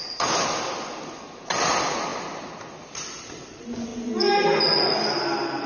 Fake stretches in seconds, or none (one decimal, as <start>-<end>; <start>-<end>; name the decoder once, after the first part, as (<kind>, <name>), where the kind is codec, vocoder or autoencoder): none